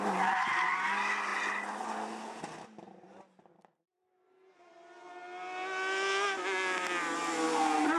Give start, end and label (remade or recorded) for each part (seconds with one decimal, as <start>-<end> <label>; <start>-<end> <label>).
0.0-8.0 recorded